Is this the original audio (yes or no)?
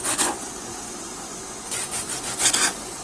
no